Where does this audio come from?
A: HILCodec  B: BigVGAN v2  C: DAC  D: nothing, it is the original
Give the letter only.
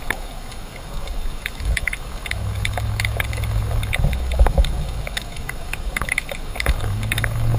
C